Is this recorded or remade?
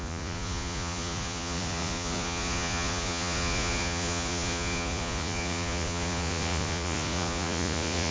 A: remade